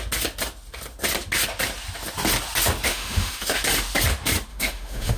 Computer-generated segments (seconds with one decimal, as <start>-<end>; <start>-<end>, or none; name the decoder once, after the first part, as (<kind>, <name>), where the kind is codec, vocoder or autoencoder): 2.9-3.6 (autoencoder, DAC-VAE); 4.5-5.2